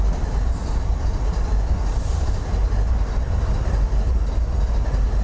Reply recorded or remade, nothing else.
recorded